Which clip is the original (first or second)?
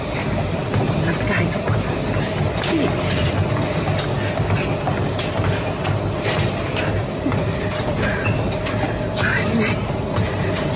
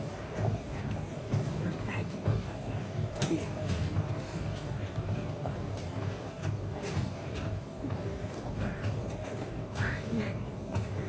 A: first